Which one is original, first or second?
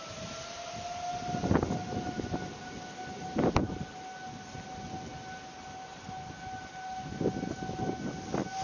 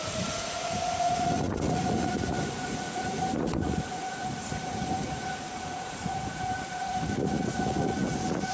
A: first